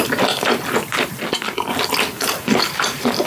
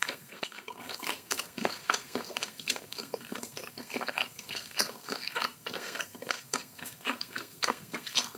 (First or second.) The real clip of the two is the first